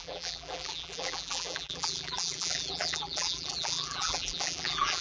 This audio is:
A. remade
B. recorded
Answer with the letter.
A